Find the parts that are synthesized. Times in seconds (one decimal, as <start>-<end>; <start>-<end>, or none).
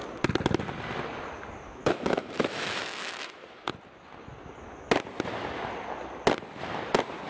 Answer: 1.8-3.3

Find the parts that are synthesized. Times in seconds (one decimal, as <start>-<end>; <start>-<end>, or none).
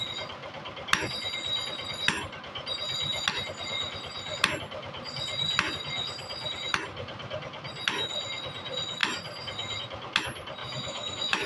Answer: 10.6-11.5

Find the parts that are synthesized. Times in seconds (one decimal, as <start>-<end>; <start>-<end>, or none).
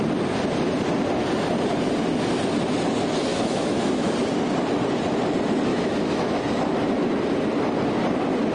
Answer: 3.3-4.1; 5.7-6.4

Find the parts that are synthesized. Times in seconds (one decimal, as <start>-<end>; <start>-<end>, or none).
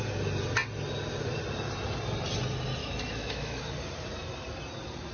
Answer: 2.8-3.6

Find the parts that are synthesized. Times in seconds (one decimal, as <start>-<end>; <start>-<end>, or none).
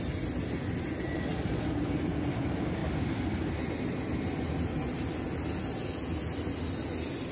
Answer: none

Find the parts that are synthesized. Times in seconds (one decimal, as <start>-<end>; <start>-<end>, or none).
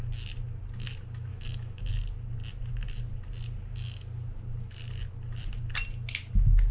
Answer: 1.3-1.9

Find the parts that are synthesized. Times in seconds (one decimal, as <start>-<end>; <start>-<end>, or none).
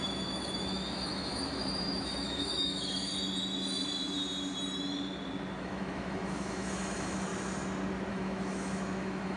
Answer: 0.0-3.1; 5.6-7.3; 8.1-9.4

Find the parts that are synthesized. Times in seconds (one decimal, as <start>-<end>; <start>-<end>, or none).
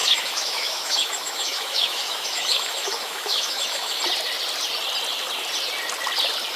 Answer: 0.0-4.0